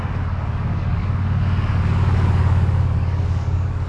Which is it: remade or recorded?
remade